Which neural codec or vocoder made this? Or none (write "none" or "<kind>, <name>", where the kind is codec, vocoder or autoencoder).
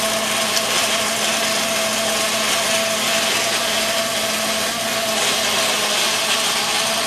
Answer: none